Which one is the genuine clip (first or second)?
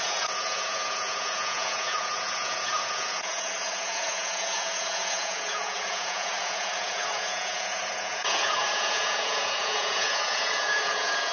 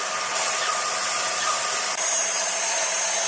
second